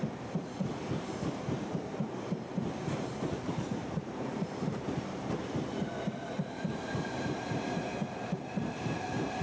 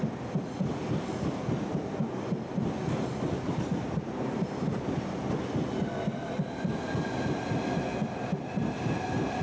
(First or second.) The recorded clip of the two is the second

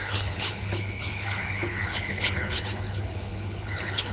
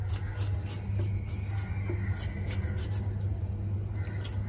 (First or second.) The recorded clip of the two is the second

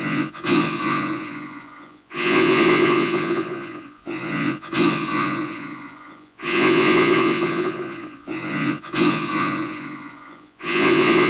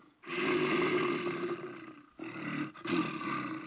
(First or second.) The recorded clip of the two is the second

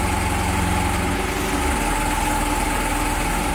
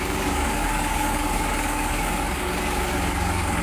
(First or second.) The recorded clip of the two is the first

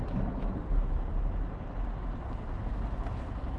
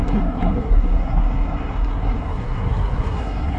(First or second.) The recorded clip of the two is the first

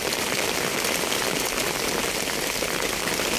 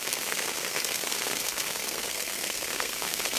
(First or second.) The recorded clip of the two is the first